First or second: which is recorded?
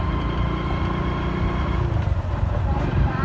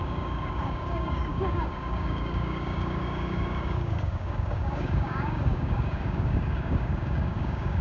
first